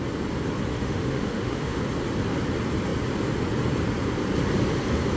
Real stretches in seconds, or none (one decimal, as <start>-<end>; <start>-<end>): 0.0-0.7; 1.8-5.2